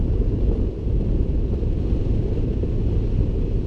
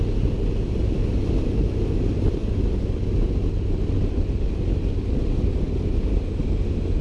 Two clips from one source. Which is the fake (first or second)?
first